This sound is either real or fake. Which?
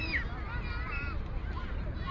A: real